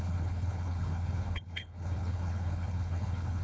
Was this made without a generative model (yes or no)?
no